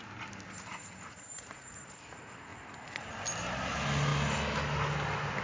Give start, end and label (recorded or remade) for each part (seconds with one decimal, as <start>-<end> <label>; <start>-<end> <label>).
0.0-0.7 recorded; 0.7-1.9 remade; 1.9-5.4 recorded